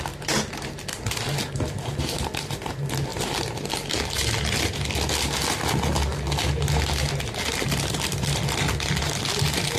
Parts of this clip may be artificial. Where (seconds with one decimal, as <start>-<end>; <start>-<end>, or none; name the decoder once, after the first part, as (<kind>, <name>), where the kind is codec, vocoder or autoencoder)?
none